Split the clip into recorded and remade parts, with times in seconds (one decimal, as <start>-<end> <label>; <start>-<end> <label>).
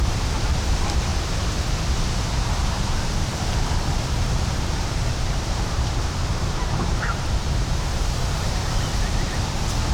0.0-1.1 remade; 1.1-2.1 recorded; 2.1-9.9 remade